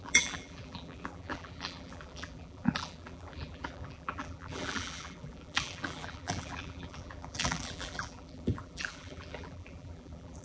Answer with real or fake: fake